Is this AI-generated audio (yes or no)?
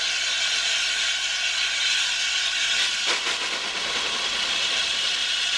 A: no